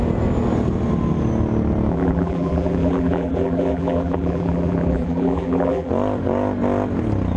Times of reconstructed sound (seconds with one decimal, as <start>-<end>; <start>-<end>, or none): 1.9-5.9